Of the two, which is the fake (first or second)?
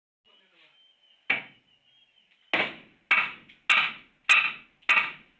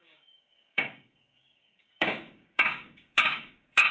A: second